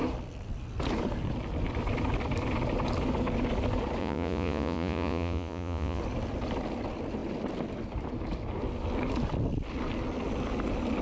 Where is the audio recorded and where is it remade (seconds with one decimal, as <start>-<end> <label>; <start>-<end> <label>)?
0.0-4.0 recorded; 4.0-6.0 remade; 6.0-11.0 recorded